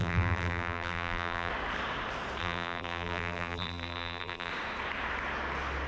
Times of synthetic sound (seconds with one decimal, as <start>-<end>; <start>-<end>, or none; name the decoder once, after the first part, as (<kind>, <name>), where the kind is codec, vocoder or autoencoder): 0.0-1.5 (vocoder, BigVGAN v2); 2.4-4.5